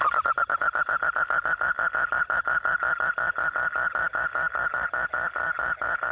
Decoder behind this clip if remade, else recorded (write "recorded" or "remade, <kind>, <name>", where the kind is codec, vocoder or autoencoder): recorded